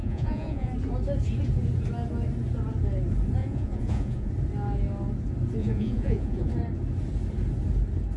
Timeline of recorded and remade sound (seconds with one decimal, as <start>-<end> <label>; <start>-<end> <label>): 0.0-0.7 remade; 0.7-3.4 recorded; 3.4-4.3 remade; 4.3-5.6 recorded; 5.6-6.5 remade; 6.5-8.2 recorded